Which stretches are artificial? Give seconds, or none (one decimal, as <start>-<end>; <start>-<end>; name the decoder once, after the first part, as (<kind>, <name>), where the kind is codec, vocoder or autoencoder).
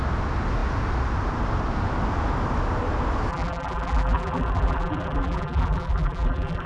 3.3-6.7 (vocoder, BigVGAN v2)